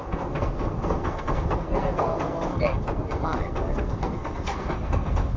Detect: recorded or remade remade